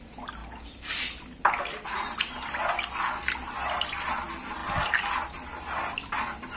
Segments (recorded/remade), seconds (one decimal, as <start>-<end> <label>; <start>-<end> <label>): 0.0-6.6 recorded